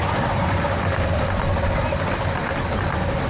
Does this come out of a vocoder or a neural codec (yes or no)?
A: no